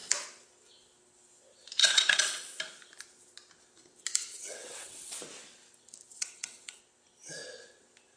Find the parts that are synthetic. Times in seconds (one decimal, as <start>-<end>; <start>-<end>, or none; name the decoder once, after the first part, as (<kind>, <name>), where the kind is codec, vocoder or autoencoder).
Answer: 1.8-2.6 (vocoder, WaveNeXt); 4.3-5.2; 6.2-6.8